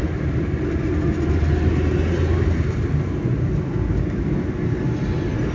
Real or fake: real